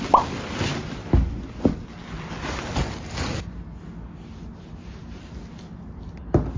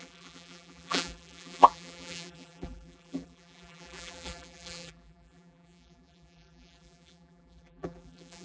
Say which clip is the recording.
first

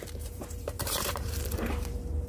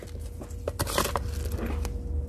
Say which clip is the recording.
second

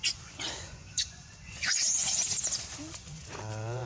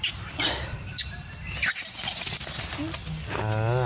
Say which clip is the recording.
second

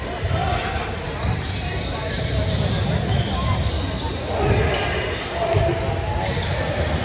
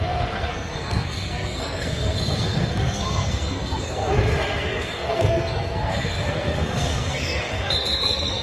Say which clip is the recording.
first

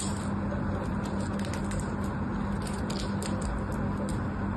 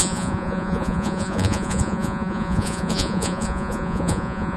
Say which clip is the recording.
first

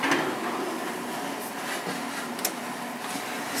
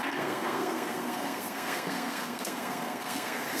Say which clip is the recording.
first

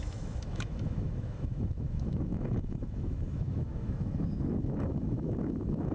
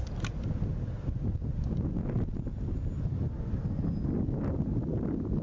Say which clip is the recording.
second